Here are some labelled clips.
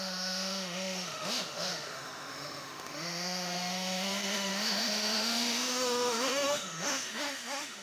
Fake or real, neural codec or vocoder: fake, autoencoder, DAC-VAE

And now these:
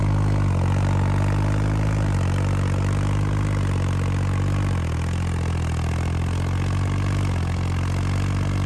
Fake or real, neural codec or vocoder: real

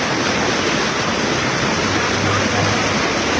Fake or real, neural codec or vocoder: real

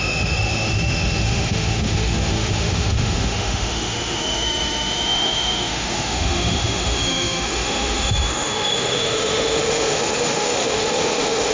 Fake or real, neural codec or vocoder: fake, autoencoder, DAC-VAE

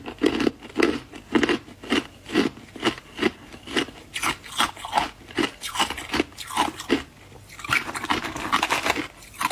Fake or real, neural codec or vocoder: real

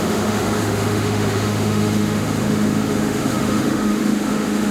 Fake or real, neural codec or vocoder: fake, autoencoder, DAC-VAE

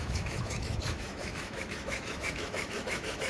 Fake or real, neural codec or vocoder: fake, autoencoder, DAC-VAE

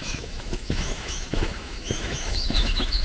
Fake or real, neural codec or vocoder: fake, autoencoder, DAC-VAE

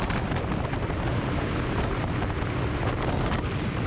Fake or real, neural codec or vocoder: real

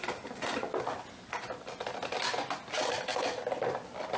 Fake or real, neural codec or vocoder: real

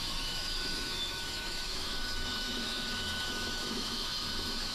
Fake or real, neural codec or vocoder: fake, autoencoder, DAC-VAE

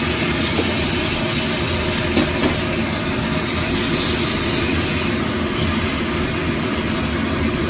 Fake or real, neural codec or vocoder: real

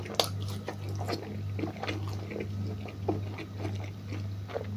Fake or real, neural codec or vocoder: real